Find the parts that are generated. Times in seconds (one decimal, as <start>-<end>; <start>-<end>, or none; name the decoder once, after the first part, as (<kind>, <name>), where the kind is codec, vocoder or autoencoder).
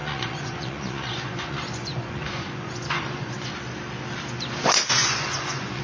0.0-3.5 (vocoder, Vocos); 5.0-5.8